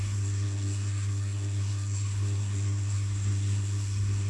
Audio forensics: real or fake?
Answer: fake